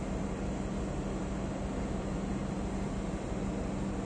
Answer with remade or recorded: recorded